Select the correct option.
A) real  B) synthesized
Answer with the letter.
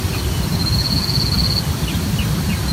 A